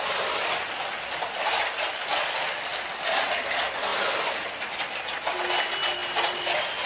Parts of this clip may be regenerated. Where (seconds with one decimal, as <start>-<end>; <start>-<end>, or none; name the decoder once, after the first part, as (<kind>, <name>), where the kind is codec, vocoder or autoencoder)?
6.0-6.9 (vocoder, BigVGAN v2)